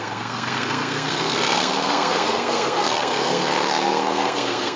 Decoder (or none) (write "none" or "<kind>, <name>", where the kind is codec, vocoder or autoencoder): codec, SNAC